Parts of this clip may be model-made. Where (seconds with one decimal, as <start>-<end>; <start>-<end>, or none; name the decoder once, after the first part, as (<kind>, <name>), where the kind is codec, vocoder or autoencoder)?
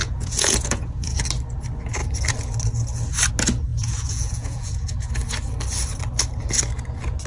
0.0-1.2 (vocoder, Vocos); 3.7-5.1